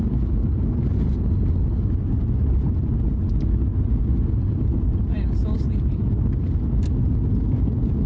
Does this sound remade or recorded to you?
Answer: recorded